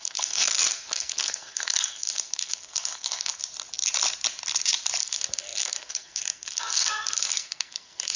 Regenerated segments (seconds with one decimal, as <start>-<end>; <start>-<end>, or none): 0.0-3.4; 5.0-8.2